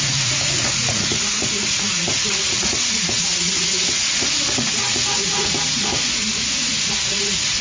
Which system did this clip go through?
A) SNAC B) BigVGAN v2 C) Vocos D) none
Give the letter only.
C